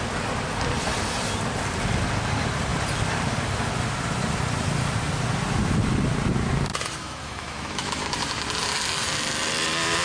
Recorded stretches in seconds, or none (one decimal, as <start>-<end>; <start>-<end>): 0.0-7.0; 8.1-10.0